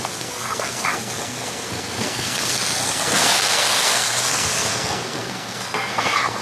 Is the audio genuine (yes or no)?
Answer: no